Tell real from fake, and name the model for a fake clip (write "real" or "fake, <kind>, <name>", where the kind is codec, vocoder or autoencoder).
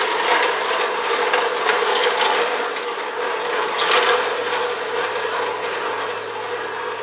real